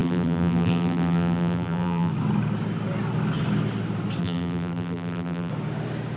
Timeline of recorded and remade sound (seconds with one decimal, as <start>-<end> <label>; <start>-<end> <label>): 0.0-2.1 remade; 2.1-4.2 recorded; 4.2-5.5 remade; 5.5-6.2 recorded